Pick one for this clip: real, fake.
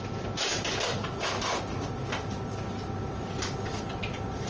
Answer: real